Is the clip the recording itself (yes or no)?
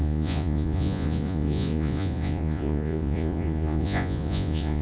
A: no